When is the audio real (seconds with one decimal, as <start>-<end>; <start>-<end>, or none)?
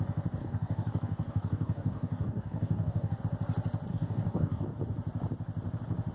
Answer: 0.0-0.4; 3.2-3.9; 4.7-6.1